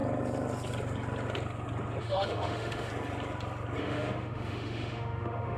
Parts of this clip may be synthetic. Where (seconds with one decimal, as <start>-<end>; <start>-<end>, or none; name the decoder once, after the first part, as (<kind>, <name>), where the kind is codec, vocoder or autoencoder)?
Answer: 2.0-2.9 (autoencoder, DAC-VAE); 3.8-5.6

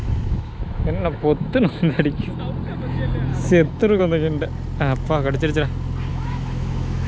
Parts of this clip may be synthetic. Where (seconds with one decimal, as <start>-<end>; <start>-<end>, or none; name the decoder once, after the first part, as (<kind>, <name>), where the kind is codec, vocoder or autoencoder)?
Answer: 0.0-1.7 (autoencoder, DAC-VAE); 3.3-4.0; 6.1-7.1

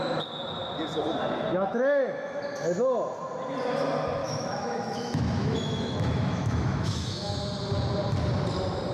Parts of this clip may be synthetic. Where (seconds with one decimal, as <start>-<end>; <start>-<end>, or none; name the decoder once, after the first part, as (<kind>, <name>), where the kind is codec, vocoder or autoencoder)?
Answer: 1.7-2.4 (autoencoder, DAC-VAE); 4.2-7.3

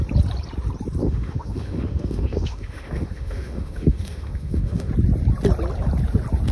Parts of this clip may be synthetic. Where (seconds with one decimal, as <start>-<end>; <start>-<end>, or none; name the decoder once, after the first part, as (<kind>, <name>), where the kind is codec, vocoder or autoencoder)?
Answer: 1.0-4.9 (autoencoder, DAC-VAE)

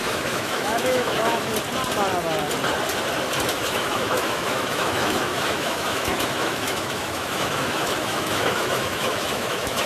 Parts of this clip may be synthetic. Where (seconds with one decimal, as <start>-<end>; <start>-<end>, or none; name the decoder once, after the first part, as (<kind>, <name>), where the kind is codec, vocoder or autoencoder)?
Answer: 0.0-1.5 (autoencoder, DAC-VAE); 3.5-9.9